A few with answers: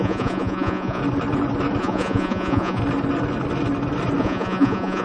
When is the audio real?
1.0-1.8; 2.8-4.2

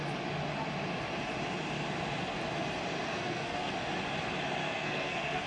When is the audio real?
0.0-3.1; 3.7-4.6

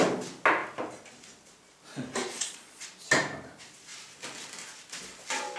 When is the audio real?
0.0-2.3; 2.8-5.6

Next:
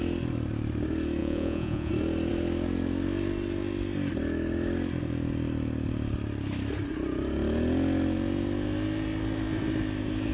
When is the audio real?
0.0-1.2; 1.9-10.3

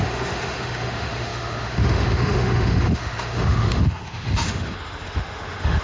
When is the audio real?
none

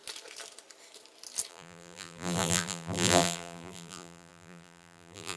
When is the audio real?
0.0-1.5

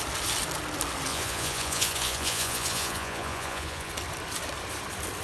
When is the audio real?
0.0-1.1; 3.9-5.2